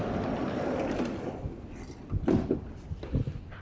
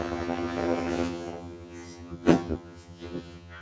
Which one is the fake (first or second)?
second